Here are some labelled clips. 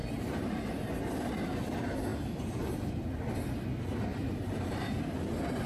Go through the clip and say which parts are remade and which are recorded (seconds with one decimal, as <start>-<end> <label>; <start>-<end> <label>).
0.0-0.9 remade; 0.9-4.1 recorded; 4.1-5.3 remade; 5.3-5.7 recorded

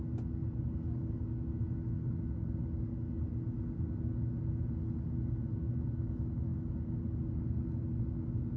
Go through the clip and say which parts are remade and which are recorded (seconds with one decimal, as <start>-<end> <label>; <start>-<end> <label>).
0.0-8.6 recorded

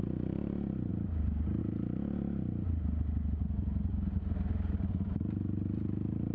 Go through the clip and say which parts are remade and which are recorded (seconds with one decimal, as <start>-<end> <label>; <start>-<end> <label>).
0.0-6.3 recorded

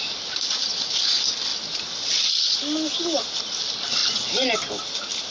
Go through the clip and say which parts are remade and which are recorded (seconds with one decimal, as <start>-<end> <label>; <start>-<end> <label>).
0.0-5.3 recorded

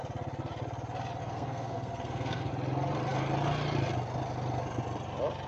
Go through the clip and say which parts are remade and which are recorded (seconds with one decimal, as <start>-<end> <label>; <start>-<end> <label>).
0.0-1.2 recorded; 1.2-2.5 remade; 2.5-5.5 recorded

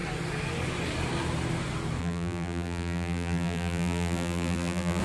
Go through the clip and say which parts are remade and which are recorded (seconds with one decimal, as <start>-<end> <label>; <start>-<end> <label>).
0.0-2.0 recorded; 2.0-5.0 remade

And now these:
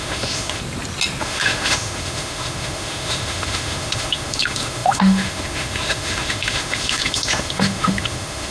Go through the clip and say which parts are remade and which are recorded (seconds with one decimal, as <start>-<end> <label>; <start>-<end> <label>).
0.0-0.6 remade; 0.6-1.2 recorded; 1.2-8.5 remade